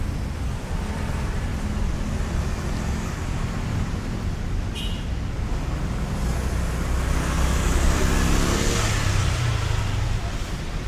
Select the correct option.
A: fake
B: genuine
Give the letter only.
B